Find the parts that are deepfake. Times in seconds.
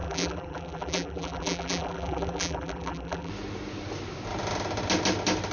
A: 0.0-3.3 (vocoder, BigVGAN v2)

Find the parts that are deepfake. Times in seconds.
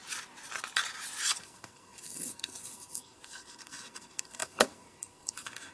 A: 1.4-5.7 (codec, SNAC)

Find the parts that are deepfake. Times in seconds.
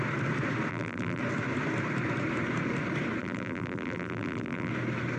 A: 0.7-1.2 (vocoder, BigVGAN v2); 3.2-4.7